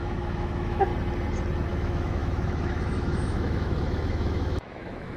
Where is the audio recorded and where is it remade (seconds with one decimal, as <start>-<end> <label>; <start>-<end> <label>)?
0.0-0.9 remade; 0.9-1.7 recorded; 1.7-5.2 remade